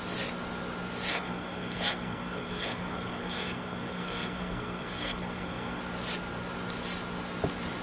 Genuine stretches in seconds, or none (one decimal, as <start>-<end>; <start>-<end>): 0.0-1.1; 5.8-7.8